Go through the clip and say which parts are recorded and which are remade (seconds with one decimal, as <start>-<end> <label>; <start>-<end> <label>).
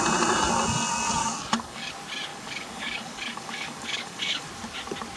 0.0-1.2 recorded; 1.2-1.9 remade; 1.9-2.3 recorded; 2.3-4.5 remade; 4.5-5.2 recorded